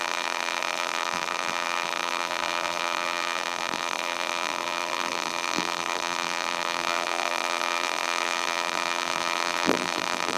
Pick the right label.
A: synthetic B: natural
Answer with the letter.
A